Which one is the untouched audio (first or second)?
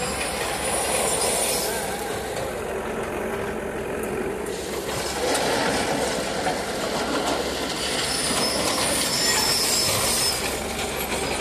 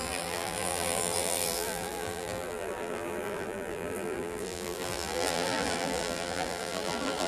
first